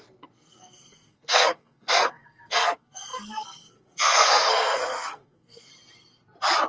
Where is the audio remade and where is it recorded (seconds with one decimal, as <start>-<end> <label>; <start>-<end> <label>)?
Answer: 0.0-5.7 remade; 5.7-6.7 recorded